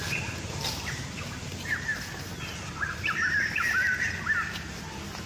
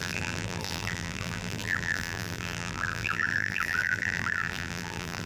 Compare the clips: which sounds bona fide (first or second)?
first